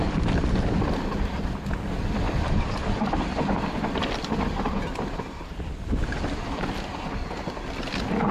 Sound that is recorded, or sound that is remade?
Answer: recorded